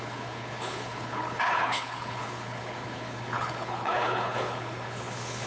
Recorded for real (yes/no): no